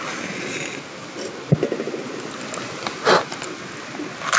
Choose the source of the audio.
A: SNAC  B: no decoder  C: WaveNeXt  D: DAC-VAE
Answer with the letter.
B